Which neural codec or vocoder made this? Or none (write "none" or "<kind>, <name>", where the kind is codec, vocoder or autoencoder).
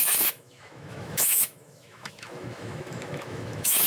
autoencoder, DAC-VAE